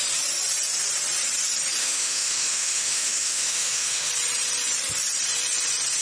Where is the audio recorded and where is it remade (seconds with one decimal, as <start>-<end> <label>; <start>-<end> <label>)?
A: 0.0-1.8 recorded; 1.8-4.1 remade; 4.1-6.0 recorded